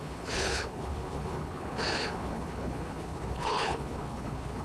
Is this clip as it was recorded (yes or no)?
no